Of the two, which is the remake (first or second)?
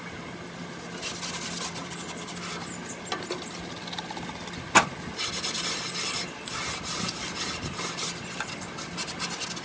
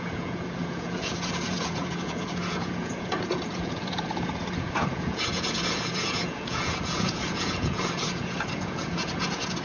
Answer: second